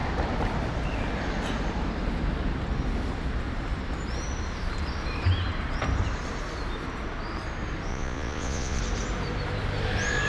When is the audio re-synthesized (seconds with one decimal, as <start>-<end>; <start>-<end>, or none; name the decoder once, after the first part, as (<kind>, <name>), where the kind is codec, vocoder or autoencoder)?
7.9-8.8 (vocoder, Vocos)